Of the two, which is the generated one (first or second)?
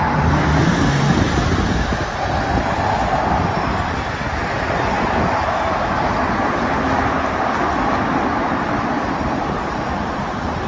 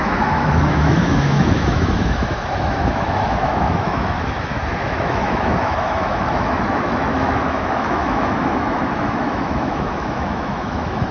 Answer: second